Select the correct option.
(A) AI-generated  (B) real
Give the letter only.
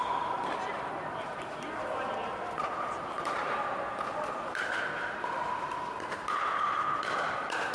A